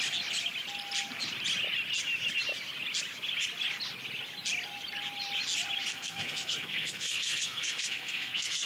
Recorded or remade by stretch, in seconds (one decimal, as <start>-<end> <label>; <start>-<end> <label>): 0.0-5.9 recorded; 5.9-8.7 remade